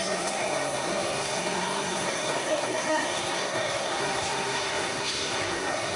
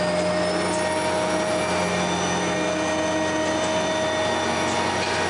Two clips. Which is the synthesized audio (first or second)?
first